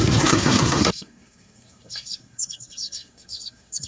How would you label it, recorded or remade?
remade